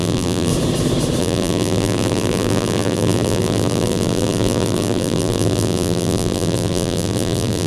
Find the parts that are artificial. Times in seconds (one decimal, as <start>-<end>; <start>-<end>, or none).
0.0-0.5; 1.2-7.7